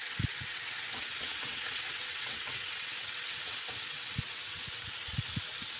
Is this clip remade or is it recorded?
remade